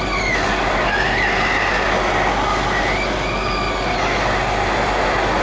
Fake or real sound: real